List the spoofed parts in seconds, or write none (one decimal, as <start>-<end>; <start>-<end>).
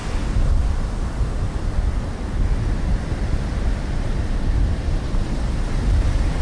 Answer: none